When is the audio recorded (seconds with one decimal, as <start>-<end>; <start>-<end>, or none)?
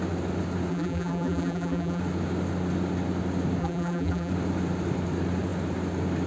0.0-0.7; 2.0-3.6; 4.3-6.3